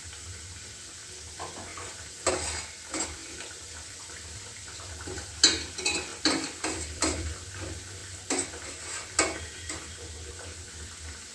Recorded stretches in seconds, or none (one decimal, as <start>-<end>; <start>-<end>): 0.0-1.7; 2.3-3.2; 5.3-6.1; 7.4-11.3